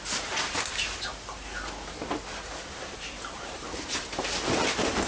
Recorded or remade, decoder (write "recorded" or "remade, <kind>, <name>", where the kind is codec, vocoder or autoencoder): remade, vocoder, BigVGAN v2